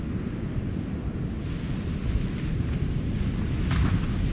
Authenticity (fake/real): real